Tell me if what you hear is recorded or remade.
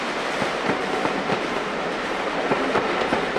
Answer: remade